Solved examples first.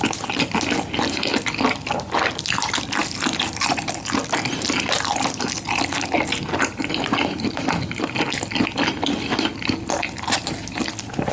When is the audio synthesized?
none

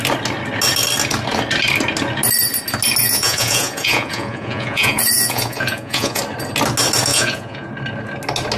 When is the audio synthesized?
3.0-6.2 (vocoder, Vocos); 7.1-7.7